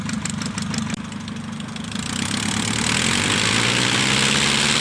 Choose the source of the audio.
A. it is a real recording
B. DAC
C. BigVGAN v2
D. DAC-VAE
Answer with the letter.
A